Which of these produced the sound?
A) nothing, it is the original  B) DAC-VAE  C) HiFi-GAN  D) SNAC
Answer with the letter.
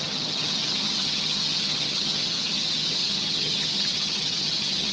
C